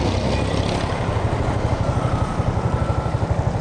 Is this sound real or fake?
real